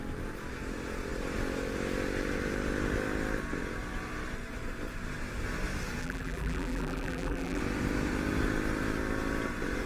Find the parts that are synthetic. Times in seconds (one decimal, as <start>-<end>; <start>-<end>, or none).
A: 6.0-7.6